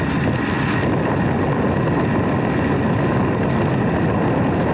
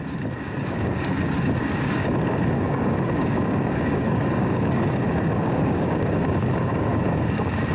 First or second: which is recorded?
first